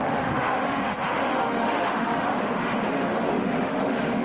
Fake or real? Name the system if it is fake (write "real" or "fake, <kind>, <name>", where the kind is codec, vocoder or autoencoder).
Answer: fake, autoencoder, DAC-VAE